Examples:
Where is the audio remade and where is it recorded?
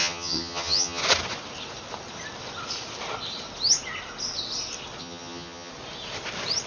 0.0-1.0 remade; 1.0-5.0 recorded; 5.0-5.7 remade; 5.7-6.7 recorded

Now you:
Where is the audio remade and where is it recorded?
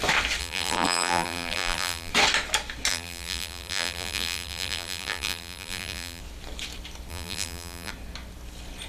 0.0-0.4 recorded; 0.4-2.1 remade; 2.1-2.9 recorded; 2.9-6.2 remade; 6.2-7.1 recorded; 7.1-7.9 remade; 7.9-8.9 recorded